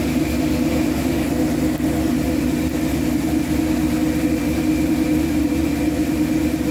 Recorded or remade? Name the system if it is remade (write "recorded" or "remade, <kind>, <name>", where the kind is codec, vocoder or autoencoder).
recorded